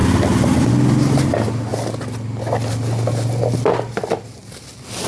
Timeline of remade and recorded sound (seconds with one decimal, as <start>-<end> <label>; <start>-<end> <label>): 0.0-0.7 remade; 0.7-5.1 recorded